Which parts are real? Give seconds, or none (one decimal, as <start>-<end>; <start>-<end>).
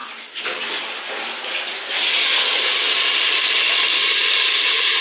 0.0-5.0